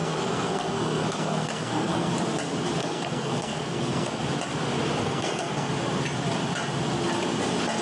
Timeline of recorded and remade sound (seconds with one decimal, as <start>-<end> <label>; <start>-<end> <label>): 0.0-2.1 remade; 2.1-2.8 recorded; 2.8-4.2 remade; 4.2-5.0 recorded; 5.0-5.7 remade; 5.7-7.8 recorded